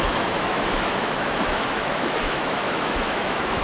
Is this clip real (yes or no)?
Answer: no